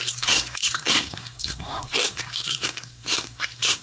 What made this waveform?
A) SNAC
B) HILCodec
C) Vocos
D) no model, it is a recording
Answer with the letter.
A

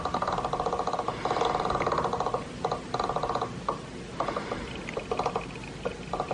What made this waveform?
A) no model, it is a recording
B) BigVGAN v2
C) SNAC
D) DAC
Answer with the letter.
A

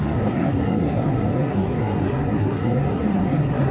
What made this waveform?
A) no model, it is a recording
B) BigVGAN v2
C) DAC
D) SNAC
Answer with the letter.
D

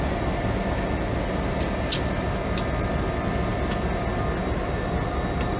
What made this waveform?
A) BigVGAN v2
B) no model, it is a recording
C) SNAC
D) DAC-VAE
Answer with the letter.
B